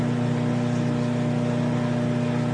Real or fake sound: real